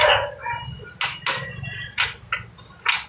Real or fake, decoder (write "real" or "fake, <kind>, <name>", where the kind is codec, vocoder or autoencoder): real